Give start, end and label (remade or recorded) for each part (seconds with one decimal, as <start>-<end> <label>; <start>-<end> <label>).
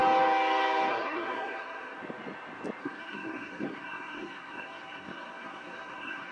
0.0-0.9 recorded; 0.9-2.0 remade; 2.0-2.8 recorded; 2.8-6.3 remade